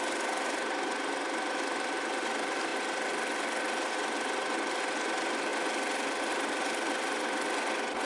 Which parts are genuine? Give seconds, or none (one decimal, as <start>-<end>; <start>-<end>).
0.0-8.0